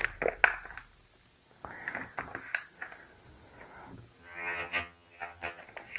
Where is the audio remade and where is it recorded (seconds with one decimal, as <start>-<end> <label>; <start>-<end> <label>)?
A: 0.0-4.2 recorded; 4.2-5.6 remade; 5.6-6.0 recorded